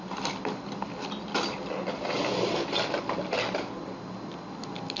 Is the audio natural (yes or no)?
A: yes